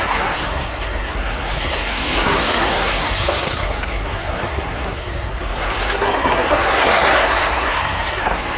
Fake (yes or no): yes